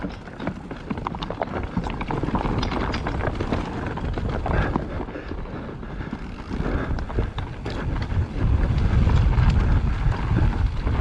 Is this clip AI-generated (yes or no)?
no